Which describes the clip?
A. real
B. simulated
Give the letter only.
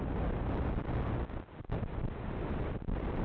A